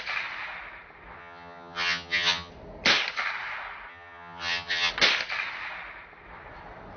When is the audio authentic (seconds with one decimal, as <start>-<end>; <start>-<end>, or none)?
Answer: 0.0-1.2; 2.5-3.9; 4.9-7.0

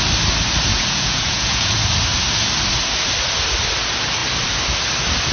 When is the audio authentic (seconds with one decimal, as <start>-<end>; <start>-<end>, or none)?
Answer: 0.0-0.7; 1.7-5.3